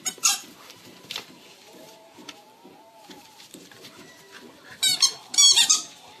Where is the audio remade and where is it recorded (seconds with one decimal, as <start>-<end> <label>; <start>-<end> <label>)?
0.0-6.2 remade